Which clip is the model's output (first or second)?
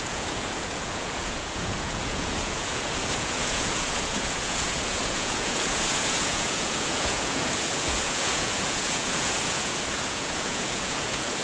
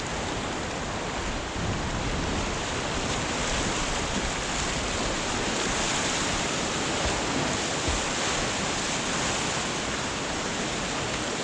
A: first